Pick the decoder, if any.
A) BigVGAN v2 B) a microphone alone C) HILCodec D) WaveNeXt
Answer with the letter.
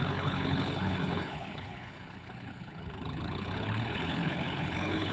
C